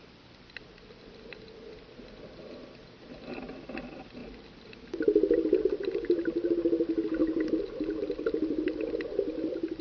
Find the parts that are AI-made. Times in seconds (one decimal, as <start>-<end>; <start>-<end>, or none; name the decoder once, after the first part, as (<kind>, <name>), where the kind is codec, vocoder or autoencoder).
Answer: 7.2-8.9 (vocoder, BigVGAN v2)